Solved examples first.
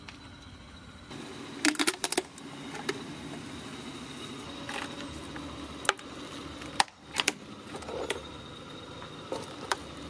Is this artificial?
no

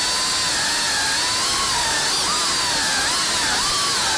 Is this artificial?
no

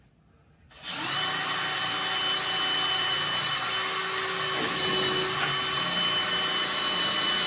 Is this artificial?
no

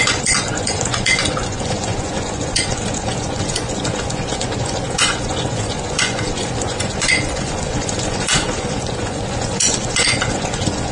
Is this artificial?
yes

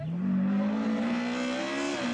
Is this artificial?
no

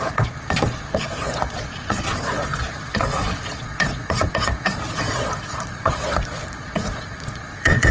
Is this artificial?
yes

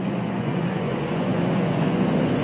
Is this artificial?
yes